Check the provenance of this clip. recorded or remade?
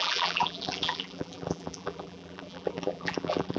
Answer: remade